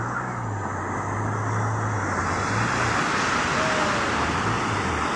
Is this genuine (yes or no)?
yes